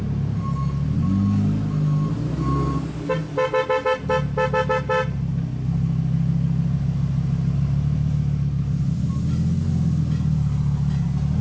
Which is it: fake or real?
real